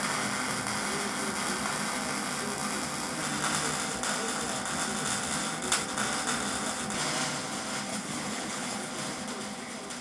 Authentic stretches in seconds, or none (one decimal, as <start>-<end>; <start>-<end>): 0.0-7.9; 8.9-10.0